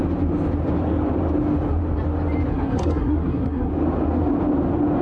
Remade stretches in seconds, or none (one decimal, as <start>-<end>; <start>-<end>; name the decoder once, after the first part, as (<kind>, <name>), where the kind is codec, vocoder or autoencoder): 2.5-3.7 (codec, SNAC)